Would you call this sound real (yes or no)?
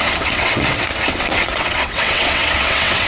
no